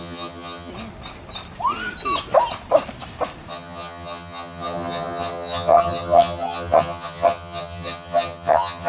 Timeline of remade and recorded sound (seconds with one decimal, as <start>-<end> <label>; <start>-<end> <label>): 0.0-0.7 remade; 0.7-3.5 recorded; 3.5-8.9 remade